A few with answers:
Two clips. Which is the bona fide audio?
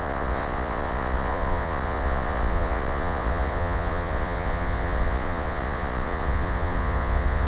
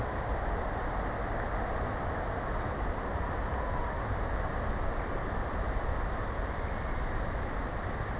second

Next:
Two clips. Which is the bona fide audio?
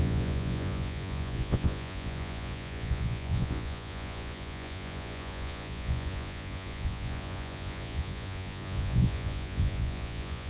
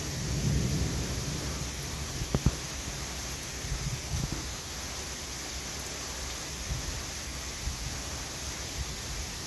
second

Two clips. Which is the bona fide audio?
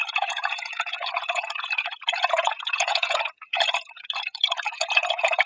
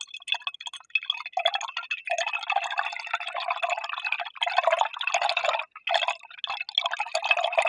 second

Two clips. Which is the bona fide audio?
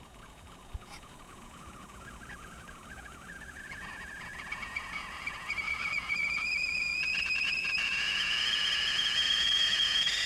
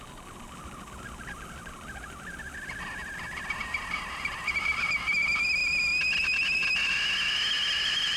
second